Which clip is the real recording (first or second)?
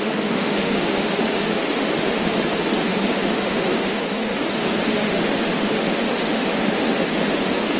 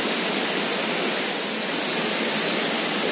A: second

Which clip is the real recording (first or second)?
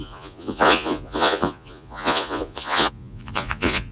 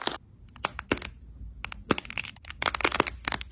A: second